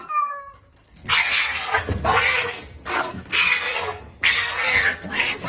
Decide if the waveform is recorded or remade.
remade